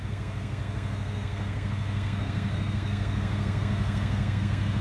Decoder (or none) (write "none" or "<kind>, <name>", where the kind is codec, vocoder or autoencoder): codec, SNAC